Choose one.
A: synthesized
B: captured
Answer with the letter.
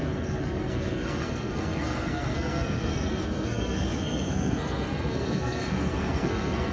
A